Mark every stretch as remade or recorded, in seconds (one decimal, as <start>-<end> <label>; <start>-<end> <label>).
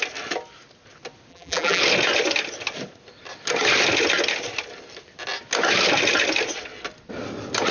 0.0-1.3 recorded; 1.3-1.8 remade; 1.8-7.7 recorded